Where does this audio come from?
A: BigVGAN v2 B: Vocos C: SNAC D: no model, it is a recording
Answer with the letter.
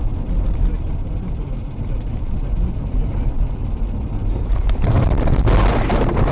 A